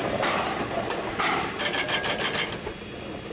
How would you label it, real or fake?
real